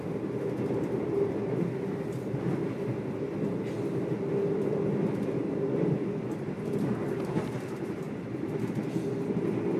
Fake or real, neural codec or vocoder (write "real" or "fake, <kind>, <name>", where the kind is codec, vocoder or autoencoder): real